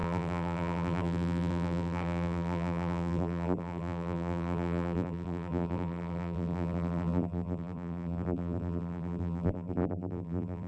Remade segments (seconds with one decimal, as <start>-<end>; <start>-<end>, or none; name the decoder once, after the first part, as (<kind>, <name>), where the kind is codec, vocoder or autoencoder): 0.0-10.7 (vocoder, BigVGAN v2)